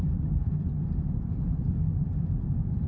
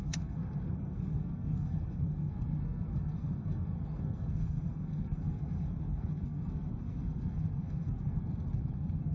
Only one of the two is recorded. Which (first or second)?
first